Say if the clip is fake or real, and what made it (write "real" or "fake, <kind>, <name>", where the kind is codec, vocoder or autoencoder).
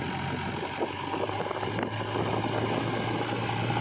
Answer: real